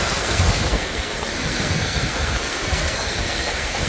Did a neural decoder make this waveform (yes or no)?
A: yes